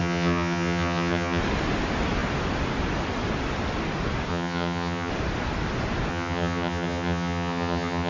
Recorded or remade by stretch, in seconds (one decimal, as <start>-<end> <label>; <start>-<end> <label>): 0.0-1.4 remade; 1.4-4.3 recorded; 4.3-5.1 remade; 5.1-6.1 recorded; 6.1-8.1 remade